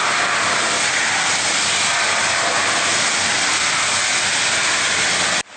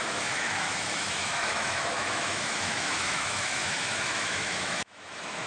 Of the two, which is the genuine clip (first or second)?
first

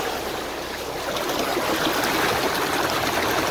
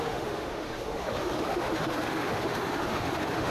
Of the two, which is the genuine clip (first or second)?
first